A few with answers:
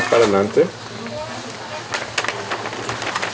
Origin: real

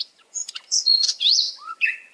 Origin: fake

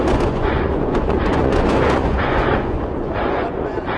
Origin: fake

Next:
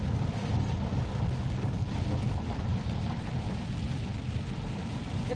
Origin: real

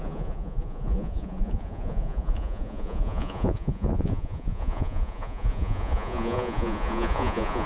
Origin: fake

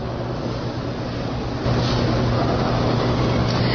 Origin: real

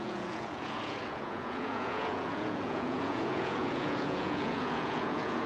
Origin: fake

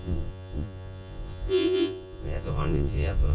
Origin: fake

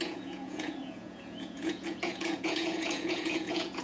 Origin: fake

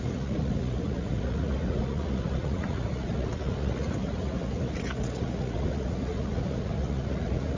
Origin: fake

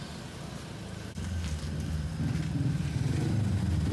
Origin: real